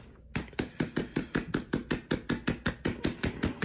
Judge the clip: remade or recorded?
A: recorded